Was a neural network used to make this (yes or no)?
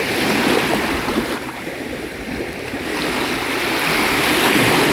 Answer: no